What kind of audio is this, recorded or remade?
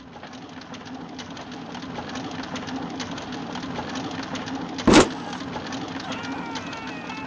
recorded